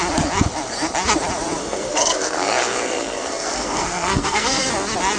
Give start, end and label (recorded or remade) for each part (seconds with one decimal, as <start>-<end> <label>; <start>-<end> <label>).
0.0-1.6 recorded; 1.6-4.7 remade; 4.7-5.2 recorded